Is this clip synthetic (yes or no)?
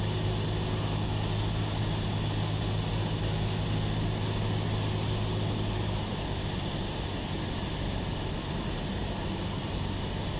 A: no